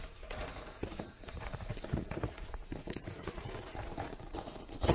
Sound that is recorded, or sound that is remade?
remade